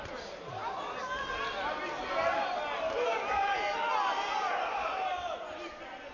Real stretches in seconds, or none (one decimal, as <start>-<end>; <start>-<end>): 0.6-4.1